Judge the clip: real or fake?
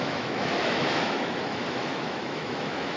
fake